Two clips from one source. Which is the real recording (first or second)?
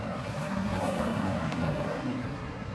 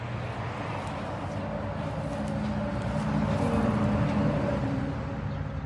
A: second